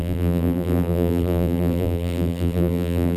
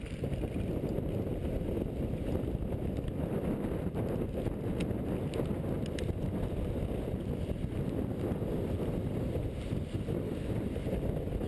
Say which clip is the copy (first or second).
first